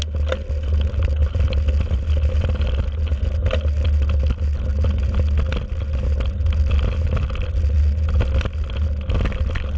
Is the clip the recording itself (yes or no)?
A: yes